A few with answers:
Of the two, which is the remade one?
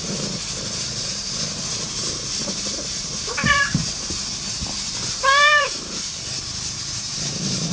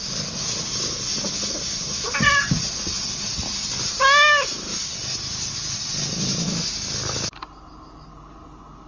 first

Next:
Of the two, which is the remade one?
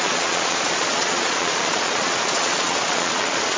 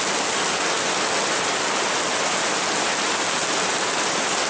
first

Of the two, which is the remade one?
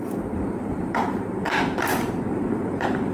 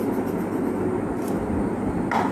first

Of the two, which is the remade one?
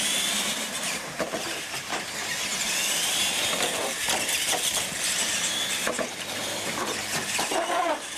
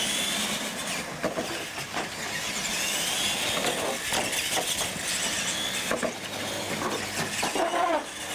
first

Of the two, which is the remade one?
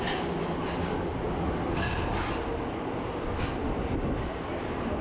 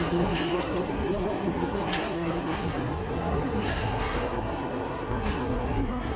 second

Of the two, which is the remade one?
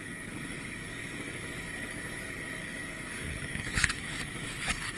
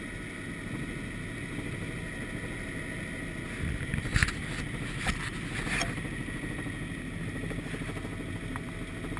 first